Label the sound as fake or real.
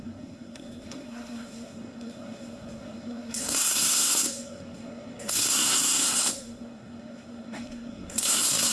fake